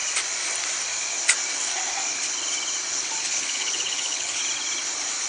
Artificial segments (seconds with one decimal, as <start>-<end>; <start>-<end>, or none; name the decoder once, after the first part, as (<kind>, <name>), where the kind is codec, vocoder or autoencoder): 3.2-4.4 (codec, HILCodec)